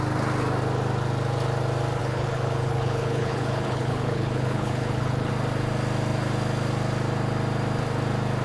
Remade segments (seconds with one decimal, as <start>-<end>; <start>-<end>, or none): 2.0-5.3